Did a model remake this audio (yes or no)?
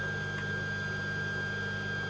no